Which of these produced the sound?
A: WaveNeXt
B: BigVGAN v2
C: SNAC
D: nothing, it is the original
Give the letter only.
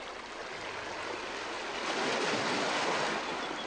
D